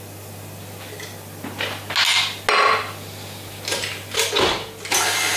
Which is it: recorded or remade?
recorded